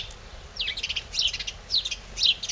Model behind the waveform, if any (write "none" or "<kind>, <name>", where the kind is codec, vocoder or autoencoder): none